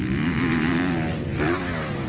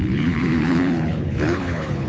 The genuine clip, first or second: first